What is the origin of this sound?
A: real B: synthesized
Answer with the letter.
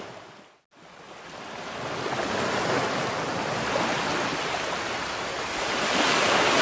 A